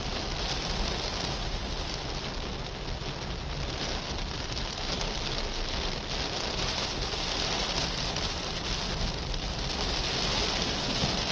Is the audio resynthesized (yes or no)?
no